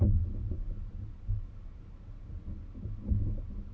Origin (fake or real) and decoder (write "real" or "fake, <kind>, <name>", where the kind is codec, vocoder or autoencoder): real